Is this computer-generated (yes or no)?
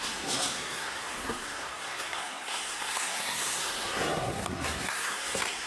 yes